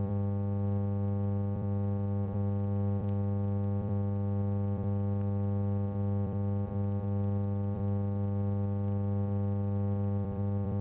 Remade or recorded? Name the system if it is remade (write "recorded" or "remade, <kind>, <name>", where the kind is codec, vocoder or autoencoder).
remade, vocoder, BigVGAN v2